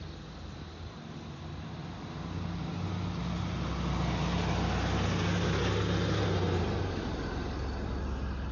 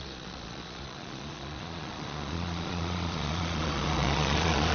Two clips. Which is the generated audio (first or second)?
second